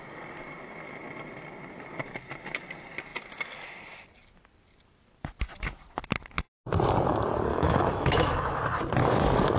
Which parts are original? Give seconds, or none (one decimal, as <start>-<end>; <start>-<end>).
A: 0.0-7.5; 8.6-9.6